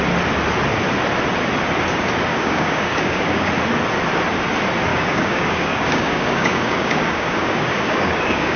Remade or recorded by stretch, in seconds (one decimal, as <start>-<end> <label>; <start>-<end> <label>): 0.0-2.3 recorded; 2.3-3.5 remade; 3.5-4.9 recorded; 4.9-8.6 remade